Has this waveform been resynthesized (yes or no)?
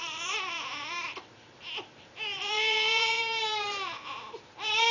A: yes